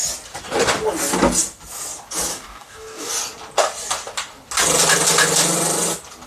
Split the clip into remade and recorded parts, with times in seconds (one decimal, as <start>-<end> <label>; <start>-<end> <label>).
0.0-2.3 recorded; 2.3-3.1 remade; 3.1-6.3 recorded